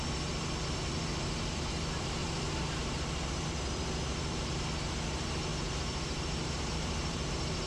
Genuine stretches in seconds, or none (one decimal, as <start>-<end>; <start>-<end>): 0.0-2.2; 3.4-5.5; 7.3-7.7